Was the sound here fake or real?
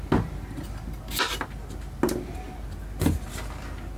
real